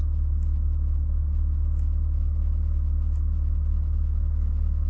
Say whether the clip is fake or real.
real